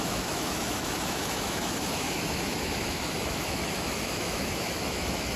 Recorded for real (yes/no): no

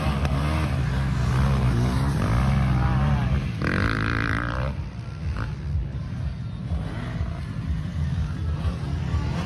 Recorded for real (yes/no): yes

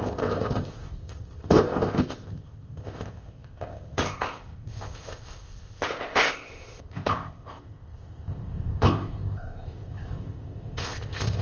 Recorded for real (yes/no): no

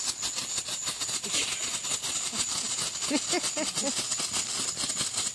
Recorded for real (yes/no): yes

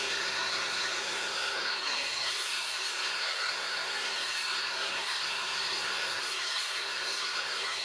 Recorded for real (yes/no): no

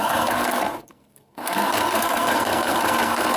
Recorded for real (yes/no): no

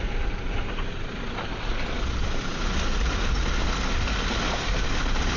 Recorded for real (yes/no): yes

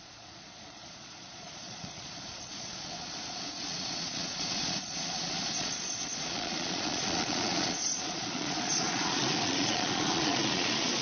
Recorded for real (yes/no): no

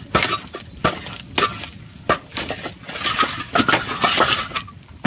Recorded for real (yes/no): yes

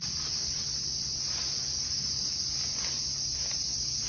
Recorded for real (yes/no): yes